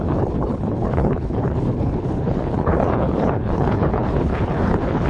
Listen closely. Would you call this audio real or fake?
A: fake